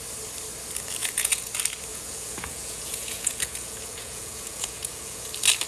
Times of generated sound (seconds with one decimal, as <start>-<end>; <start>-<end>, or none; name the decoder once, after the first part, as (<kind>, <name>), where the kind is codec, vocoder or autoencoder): 1.0-1.5 (vocoder, Vocos); 1.9-5.3